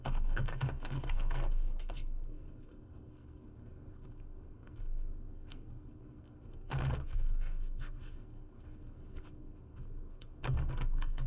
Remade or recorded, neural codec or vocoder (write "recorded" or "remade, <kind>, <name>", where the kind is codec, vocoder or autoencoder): remade, codec, SNAC